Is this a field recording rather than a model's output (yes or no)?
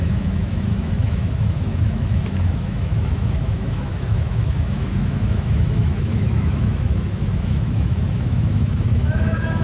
no